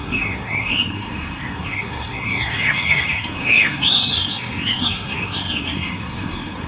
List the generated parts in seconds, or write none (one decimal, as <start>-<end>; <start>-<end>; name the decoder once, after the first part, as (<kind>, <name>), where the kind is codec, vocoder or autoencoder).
0.0-6.7 (codec, SNAC)